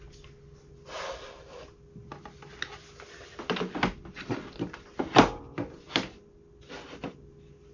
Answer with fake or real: real